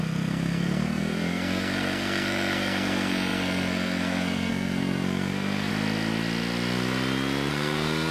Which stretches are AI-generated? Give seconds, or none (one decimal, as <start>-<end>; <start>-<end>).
0.0-5.7; 7.5-8.1

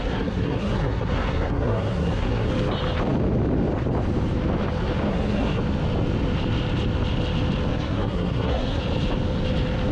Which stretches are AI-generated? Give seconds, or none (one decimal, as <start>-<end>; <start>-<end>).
0.0-2.5; 5.1-5.6; 7.7-8.8

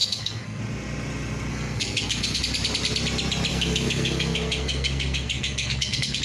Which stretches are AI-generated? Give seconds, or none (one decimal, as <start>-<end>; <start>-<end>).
0.0-0.6; 1.5-2.4; 3.5-6.2

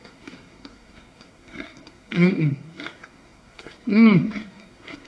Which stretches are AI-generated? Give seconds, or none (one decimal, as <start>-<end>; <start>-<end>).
0.0-5.1

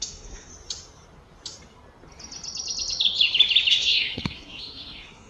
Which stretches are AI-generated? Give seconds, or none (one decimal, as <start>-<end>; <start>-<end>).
0.0-0.5; 3.7-5.3

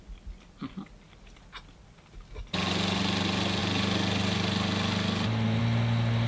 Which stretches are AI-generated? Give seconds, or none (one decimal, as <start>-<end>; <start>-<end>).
none

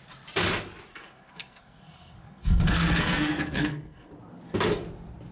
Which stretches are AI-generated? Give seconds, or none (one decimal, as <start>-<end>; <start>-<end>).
0.9-4.1